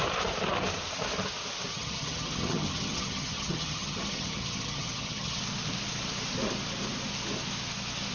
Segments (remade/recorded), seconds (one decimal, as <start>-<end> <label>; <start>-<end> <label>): 0.0-1.7 recorded; 1.7-5.4 remade; 5.4-8.1 recorded